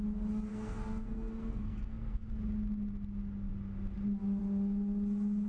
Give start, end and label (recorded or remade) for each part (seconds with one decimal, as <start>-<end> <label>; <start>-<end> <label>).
0.0-0.5 recorded; 0.5-2.3 remade; 2.3-5.5 recorded